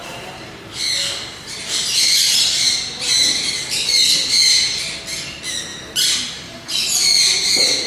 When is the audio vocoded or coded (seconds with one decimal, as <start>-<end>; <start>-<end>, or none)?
0.0-0.6; 1.3-3.7; 5.7-7.9